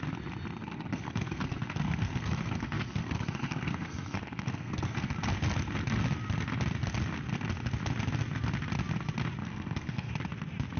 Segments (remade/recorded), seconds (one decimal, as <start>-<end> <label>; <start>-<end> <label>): 0.0-0.6 recorded; 0.6-5.1 remade; 5.1-9.4 recorded; 9.4-10.1 remade; 10.1-10.8 recorded

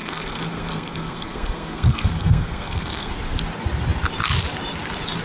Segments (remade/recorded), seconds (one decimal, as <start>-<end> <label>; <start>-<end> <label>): 0.0-3.1 remade; 3.1-5.2 recorded

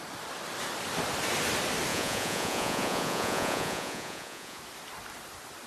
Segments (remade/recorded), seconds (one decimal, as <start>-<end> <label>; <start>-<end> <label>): 0.0-1.9 recorded; 1.9-4.6 remade; 4.6-5.7 recorded

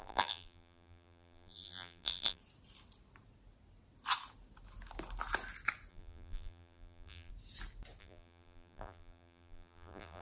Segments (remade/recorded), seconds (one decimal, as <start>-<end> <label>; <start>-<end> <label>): 0.0-2.4 remade; 2.4-5.9 recorded; 5.9-7.3 remade; 7.3-8.0 recorded; 8.0-10.2 remade